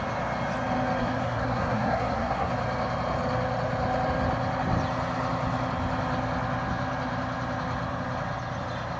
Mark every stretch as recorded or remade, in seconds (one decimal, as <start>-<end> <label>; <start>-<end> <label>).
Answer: 0.0-1.0 recorded; 1.0-2.5 remade; 2.5-9.0 recorded